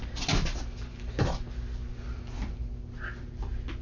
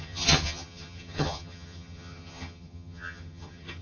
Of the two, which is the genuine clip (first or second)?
first